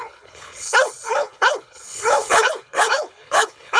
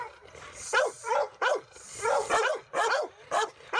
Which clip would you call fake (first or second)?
first